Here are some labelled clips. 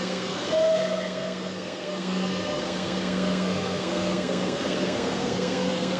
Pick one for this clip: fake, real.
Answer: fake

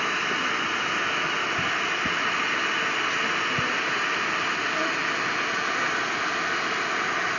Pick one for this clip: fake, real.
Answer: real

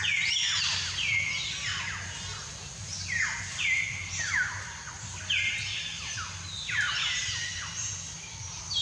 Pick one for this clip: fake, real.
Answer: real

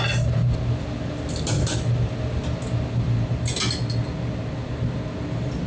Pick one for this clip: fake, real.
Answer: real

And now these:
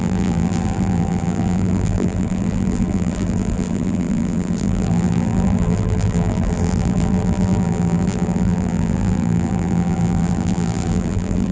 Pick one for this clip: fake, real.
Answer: fake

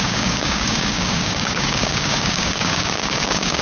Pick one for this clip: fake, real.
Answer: fake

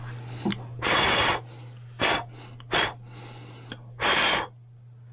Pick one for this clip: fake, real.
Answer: real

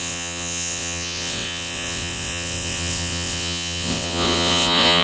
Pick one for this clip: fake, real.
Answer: fake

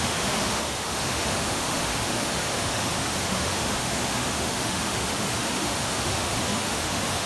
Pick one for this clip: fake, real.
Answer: fake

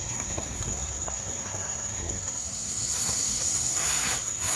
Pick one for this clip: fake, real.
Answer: fake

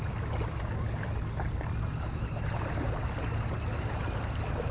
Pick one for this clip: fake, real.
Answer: real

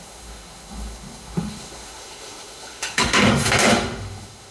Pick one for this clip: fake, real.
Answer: fake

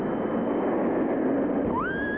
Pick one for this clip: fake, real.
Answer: real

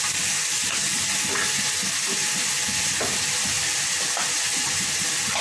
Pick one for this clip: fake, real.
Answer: real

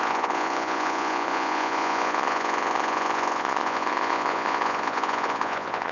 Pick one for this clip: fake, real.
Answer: fake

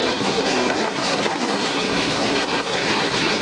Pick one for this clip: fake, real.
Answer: fake